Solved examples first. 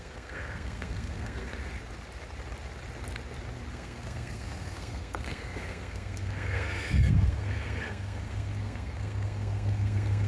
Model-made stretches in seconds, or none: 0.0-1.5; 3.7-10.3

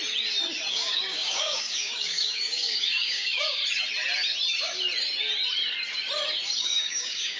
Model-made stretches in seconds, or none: 0.7-3.6; 6.6-7.4

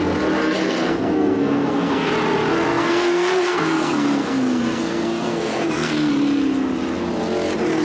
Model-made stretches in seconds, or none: 0.4-2.1; 2.7-6.1

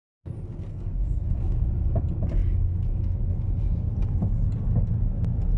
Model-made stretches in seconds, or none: 0.7-1.4